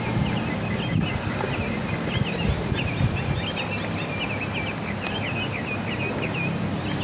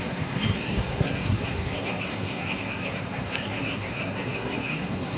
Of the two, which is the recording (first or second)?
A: first